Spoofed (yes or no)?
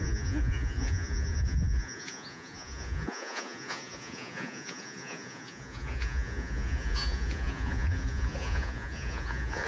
yes